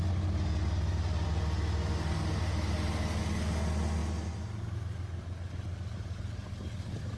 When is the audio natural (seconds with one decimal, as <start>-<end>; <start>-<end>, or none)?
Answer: 0.0-7.2

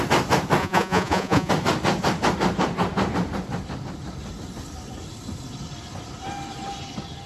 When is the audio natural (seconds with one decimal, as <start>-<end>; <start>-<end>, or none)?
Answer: 0.0-0.6; 1.5-7.3

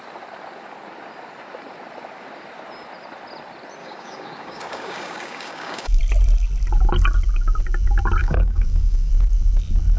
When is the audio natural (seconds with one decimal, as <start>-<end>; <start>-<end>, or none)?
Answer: 0.0-3.8; 6.0-8.2; 9.1-10.0

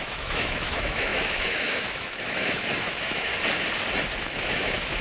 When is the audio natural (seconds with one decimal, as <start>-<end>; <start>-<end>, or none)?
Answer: 3.3-4.2

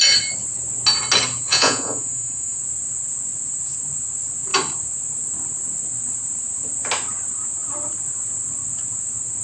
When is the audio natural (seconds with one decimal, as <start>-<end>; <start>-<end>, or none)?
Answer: 0.0-1.5; 2.6-9.4

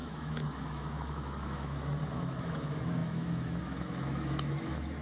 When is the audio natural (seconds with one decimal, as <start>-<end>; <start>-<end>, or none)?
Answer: none

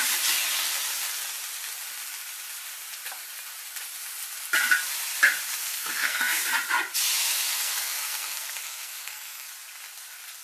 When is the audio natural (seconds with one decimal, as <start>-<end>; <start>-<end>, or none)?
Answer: 0.0-5.6; 6.4-7.2; 9.5-10.4

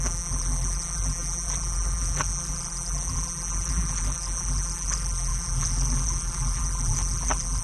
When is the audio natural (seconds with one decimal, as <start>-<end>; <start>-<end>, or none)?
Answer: none